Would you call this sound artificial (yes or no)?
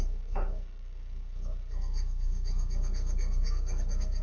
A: yes